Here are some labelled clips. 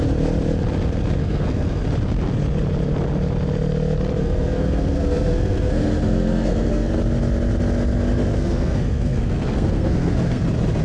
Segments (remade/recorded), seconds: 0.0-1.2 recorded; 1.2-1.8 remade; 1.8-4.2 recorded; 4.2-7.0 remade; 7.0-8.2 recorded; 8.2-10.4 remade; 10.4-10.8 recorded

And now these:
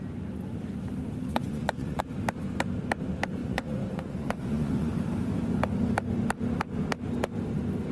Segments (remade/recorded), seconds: 0.0-1.3 recorded; 1.3-2.0 remade; 2.0-3.4 recorded; 3.4-4.9 remade; 4.9-7.9 recorded

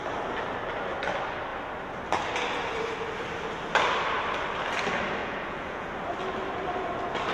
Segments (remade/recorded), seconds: 0.0-5.2 recorded; 5.2-5.9 remade; 5.9-7.3 recorded

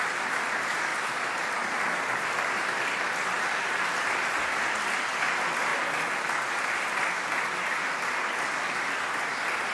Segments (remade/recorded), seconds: 0.0-9.7 recorded

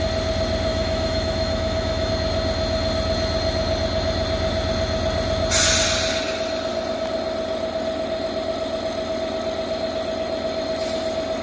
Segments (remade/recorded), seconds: 0.0-0.7 recorded; 0.7-2.1 remade; 2.1-11.4 recorded

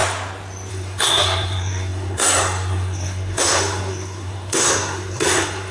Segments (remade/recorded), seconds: 0.0-0.7 recorded; 0.7-5.7 remade

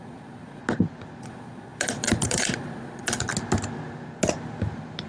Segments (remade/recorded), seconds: 0.0-0.6 remade; 0.6-1.2 recorded; 1.2-3.3 remade; 3.3-5.1 recorded